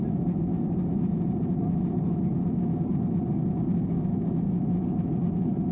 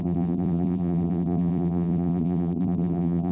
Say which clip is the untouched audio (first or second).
first